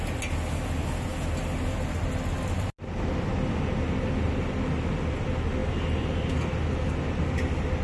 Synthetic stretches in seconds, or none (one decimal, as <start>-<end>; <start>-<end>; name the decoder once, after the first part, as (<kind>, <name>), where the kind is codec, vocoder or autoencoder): none